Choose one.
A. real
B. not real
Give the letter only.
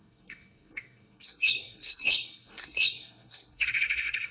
B